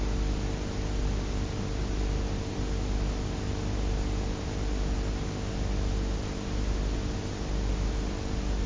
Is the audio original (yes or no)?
yes